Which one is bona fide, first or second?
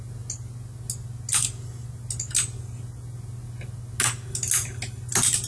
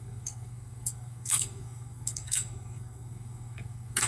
first